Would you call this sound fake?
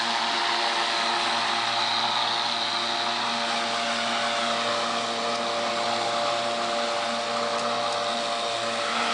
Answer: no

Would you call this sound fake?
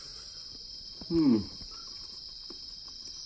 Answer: no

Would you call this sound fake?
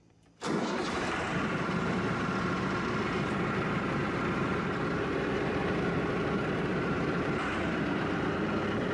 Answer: yes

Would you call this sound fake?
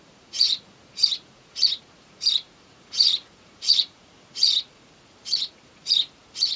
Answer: yes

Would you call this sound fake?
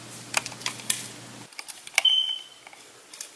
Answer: no